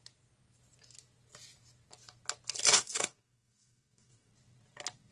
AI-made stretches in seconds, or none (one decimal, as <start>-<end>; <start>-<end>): 2.7-4.3